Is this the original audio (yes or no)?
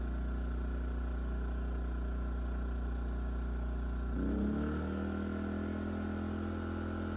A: yes